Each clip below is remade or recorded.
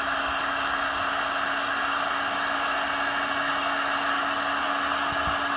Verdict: recorded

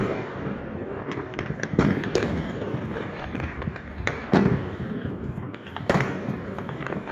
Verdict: remade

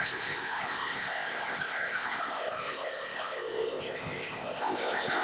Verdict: remade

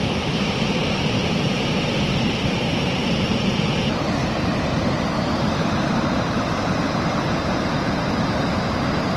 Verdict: remade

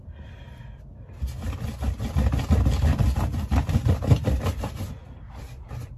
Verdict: recorded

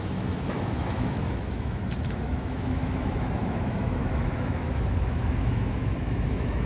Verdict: remade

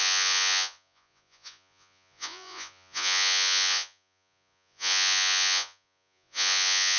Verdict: remade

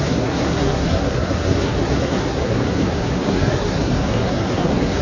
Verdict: remade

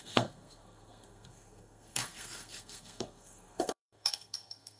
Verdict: remade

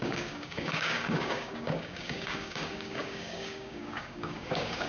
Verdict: remade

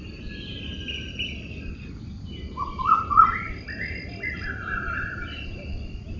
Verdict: remade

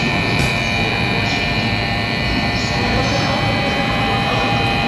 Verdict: remade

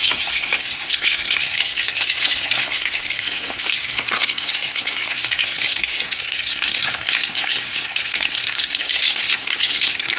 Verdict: remade